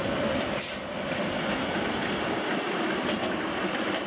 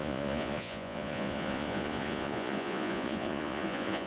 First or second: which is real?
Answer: first